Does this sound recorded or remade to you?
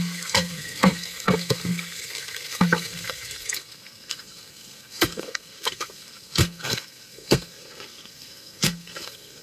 remade